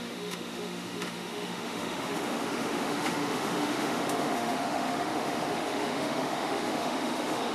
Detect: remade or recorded remade